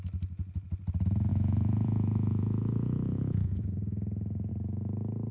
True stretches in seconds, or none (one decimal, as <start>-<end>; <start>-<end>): 0.0-1.3; 4.5-5.3